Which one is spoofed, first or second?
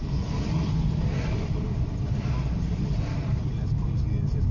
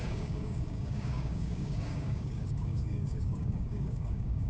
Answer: second